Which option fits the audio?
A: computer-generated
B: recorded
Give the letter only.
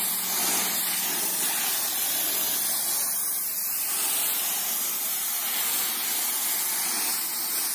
B